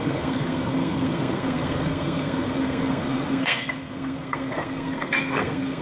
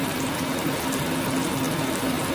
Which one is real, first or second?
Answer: second